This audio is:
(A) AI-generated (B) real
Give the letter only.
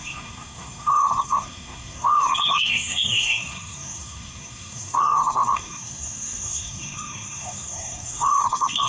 A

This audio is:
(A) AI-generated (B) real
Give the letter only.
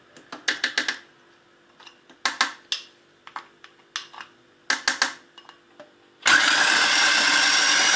B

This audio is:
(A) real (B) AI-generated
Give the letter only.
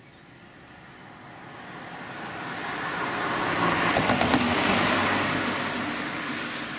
A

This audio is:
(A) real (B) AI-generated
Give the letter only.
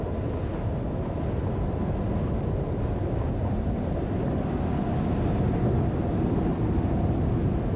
A